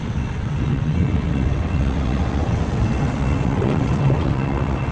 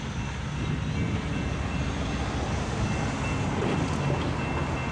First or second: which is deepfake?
first